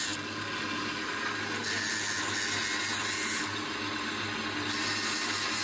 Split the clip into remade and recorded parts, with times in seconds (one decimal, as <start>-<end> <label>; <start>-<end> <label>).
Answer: 0.0-5.6 recorded